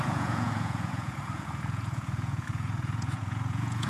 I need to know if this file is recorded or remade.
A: remade